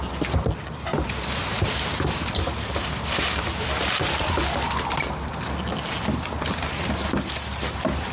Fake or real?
real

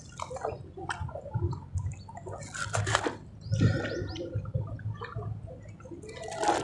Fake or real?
fake